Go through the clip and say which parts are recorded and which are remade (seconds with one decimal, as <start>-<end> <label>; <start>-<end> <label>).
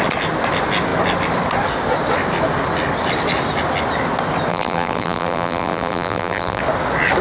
0.0-4.5 recorded; 4.5-6.6 remade; 6.6-7.2 recorded